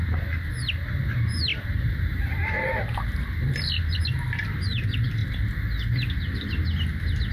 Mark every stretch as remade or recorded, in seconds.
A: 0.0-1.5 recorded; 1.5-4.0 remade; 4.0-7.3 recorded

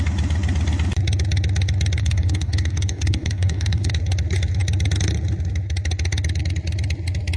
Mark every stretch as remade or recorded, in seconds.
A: 0.0-2.0 recorded; 2.0-3.9 remade; 3.9-7.4 recorded

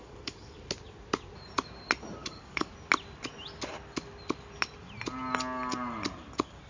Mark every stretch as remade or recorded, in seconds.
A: 0.0-0.6 remade; 0.6-2.2 recorded; 2.2-2.7 remade; 2.7-6.7 recorded

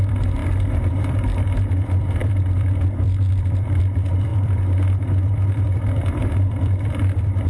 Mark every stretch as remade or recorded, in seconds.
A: 0.0-7.5 remade

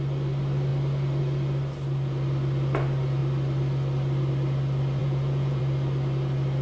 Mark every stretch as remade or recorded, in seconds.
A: 0.0-5.0 recorded; 5.0-5.6 remade; 5.6-6.6 recorded

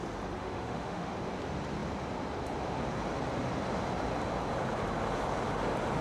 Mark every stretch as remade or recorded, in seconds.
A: 0.0-0.4 recorded; 0.4-1.1 remade; 1.1-6.0 recorded

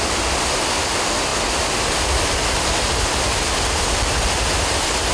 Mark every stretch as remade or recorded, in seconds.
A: 0.0-5.1 recorded